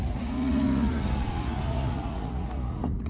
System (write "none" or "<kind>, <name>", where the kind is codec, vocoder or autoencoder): vocoder, Vocos